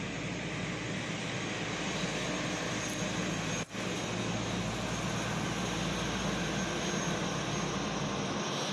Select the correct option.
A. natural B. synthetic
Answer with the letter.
A